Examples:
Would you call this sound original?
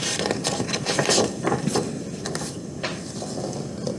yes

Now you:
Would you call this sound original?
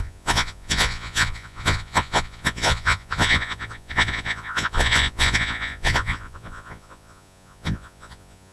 no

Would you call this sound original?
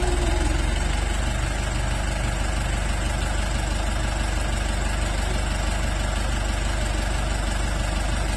yes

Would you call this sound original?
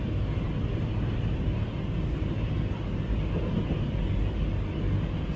yes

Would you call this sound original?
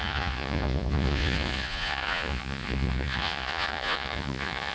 no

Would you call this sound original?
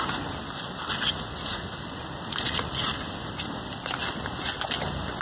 yes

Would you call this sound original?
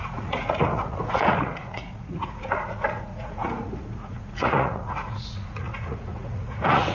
no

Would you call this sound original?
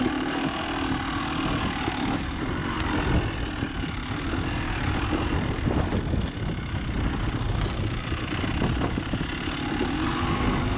yes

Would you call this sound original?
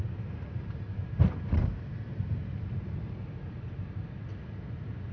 yes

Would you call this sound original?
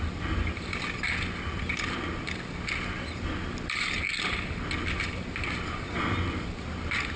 yes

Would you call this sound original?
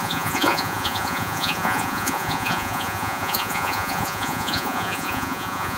no